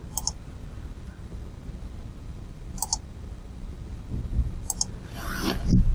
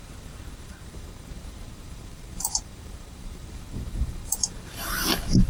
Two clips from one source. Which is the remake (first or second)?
second